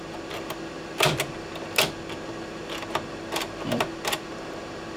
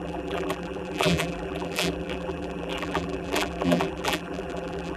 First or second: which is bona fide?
first